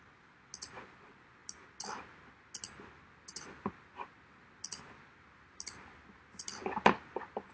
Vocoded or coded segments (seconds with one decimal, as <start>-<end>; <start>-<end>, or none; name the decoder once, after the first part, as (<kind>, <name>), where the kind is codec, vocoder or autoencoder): none